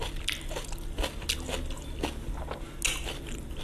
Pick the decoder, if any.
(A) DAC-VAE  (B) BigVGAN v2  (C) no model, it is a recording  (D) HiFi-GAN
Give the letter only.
C